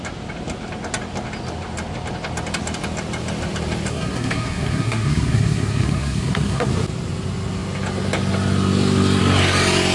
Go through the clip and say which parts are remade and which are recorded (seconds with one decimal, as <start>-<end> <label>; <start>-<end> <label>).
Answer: 0.0-3.9 recorded; 3.9-6.7 remade; 6.7-9.9 recorded